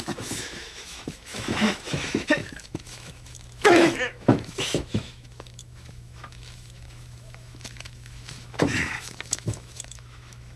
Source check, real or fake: fake